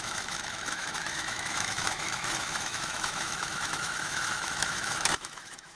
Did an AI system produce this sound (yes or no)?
yes